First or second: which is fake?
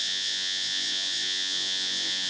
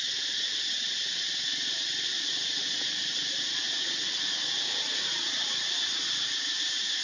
first